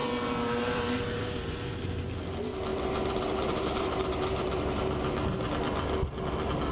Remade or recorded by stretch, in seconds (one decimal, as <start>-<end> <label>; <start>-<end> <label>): 0.0-2.0 remade; 2.0-2.7 recorded; 2.7-5.5 remade; 5.5-6.7 recorded

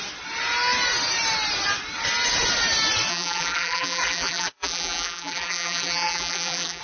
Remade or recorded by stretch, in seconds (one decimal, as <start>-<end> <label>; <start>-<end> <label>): 0.0-3.1 recorded; 3.1-6.8 remade